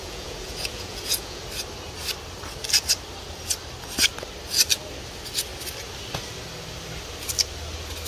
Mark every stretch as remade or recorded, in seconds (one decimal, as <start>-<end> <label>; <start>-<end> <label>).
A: 0.0-1.4 remade; 1.4-8.1 recorded